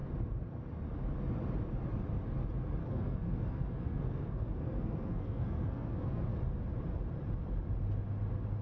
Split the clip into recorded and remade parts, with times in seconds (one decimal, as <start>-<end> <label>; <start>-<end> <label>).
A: 0.0-2.8 recorded; 2.8-6.4 remade; 6.4-8.6 recorded